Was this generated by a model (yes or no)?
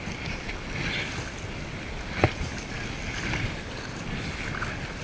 no